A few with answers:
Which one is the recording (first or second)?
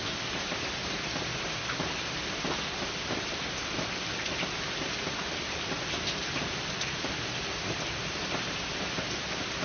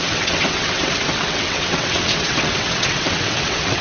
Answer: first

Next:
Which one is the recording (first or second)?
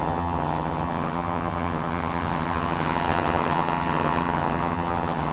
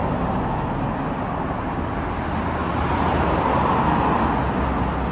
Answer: second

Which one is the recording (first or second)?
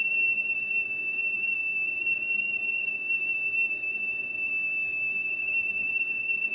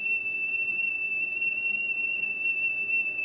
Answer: second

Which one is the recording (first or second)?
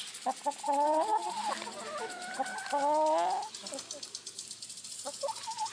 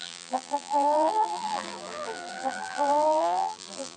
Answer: first